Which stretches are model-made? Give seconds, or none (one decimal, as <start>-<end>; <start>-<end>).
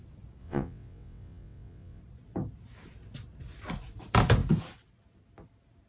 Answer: 0.4-2.0